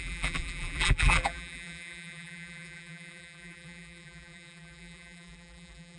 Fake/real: fake